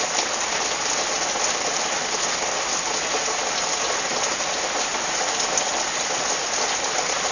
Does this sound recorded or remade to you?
recorded